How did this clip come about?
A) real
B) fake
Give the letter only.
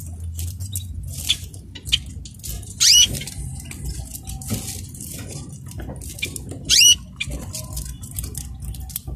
A